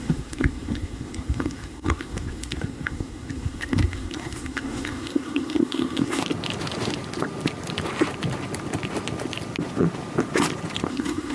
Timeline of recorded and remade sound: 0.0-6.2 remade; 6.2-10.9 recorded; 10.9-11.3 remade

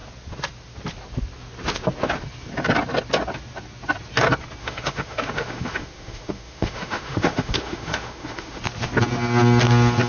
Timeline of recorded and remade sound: 0.0-4.6 recorded; 4.6-8.6 remade; 8.6-10.1 recorded

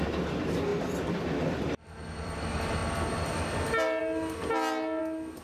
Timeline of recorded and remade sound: 0.0-0.7 recorded; 0.7-2.4 remade; 2.4-5.4 recorded